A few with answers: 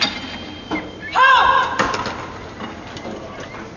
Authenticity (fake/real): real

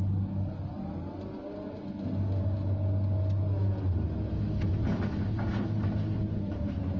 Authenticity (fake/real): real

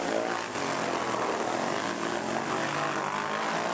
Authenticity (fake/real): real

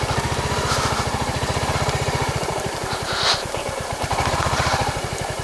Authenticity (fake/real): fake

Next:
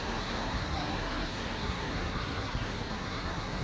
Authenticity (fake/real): fake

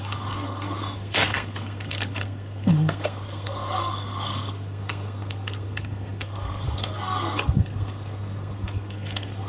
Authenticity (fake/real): fake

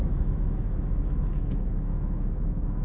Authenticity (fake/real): fake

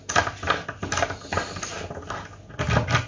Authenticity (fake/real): real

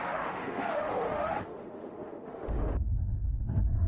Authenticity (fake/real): fake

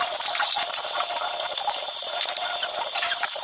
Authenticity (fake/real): fake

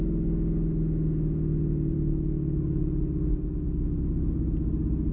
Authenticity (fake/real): real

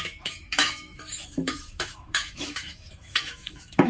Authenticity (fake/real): fake